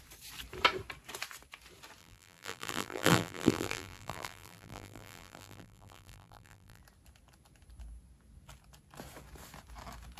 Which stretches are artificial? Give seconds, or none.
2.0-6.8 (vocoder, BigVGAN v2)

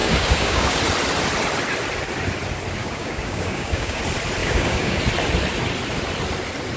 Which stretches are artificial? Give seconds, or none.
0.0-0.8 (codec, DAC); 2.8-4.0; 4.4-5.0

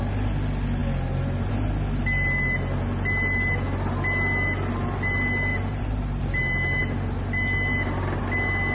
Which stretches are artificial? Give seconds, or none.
5.5-6.2 (vocoder, BigVGAN v2)

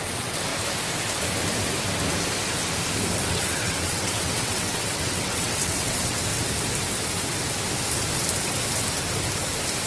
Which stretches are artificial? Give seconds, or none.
0.0-0.5 (vocoder, WaveNeXt); 3.3-6.3